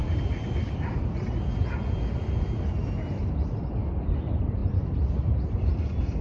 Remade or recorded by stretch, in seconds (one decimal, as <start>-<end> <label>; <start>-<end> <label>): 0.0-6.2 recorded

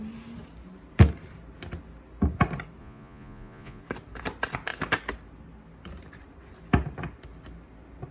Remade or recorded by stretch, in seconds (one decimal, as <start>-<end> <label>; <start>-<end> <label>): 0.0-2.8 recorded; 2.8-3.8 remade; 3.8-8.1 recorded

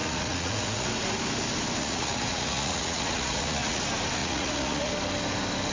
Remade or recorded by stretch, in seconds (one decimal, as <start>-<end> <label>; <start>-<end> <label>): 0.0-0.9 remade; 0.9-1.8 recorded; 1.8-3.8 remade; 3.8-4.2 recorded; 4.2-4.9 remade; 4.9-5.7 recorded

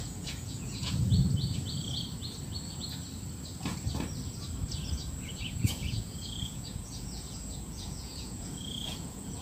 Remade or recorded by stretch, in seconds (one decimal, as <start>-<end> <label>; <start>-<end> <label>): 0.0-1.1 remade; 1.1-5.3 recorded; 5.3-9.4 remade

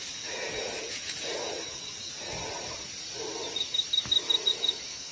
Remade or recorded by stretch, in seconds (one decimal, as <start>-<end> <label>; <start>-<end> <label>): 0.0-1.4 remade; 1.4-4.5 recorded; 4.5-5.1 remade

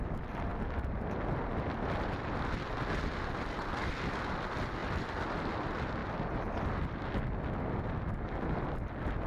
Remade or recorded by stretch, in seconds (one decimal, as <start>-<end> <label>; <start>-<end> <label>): 0.0-9.3 recorded

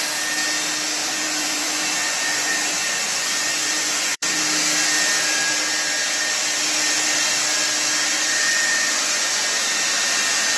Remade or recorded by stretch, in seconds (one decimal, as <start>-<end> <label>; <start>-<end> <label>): 0.0-1.0 recorded; 1.0-4.4 remade; 4.4-8.1 recorded; 8.1-9.7 remade; 9.7-10.6 recorded